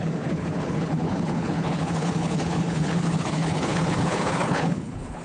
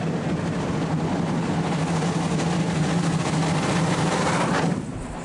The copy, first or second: first